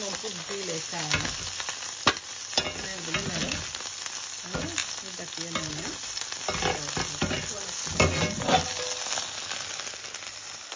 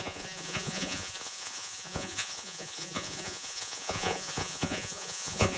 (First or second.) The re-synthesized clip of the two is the second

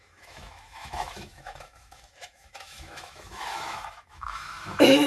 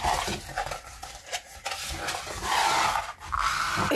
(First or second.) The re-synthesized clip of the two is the first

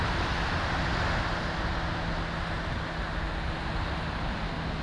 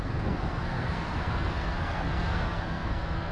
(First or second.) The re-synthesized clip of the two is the second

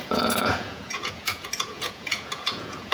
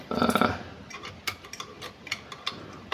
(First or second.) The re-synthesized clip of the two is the first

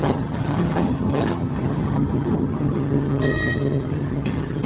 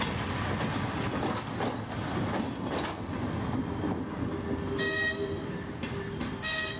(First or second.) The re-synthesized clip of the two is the first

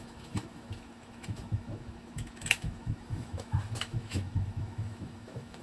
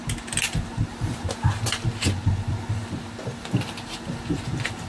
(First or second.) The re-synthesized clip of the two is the first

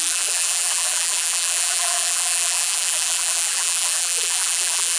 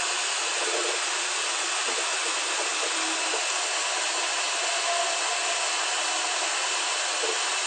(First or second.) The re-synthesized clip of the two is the first